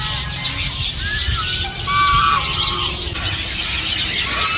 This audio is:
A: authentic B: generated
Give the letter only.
A